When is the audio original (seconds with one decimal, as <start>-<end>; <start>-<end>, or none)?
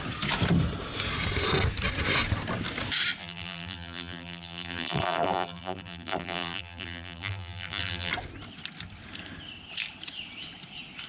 0.0-3.2; 8.1-11.1